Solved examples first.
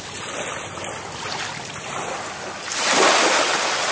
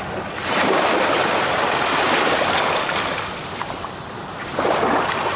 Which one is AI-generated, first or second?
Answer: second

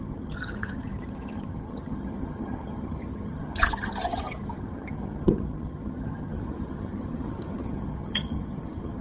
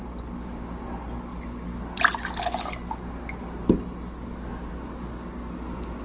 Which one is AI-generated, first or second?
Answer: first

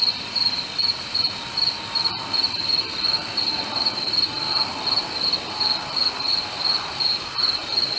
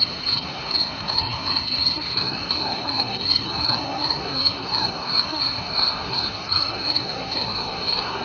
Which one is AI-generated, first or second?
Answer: second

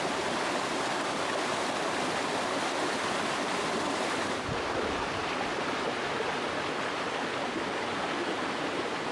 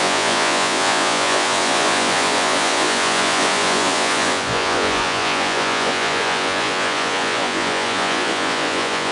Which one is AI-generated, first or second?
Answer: second